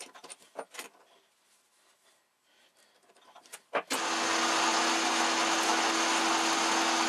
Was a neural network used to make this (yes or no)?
no